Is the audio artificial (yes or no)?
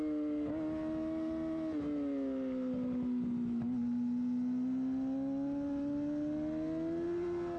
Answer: no